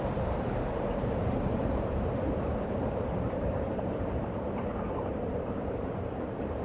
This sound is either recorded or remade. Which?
remade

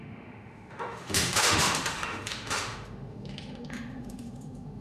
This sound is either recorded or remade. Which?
remade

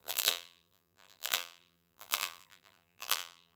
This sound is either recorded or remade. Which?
remade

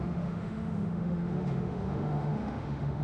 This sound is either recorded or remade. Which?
remade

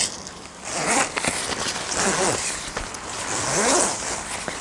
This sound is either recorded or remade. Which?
recorded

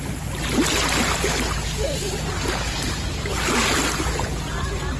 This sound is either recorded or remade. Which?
recorded